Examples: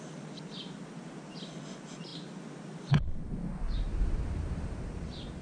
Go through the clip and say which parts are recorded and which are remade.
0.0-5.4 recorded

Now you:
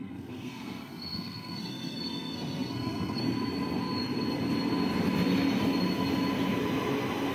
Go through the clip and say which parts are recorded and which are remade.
0.0-3.2 remade; 3.2-7.3 recorded